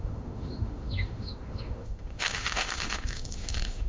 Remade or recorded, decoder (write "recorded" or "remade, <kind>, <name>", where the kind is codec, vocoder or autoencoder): remade, autoencoder, DAC-VAE